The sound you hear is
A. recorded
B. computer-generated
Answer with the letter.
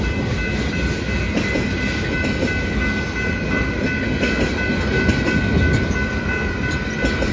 A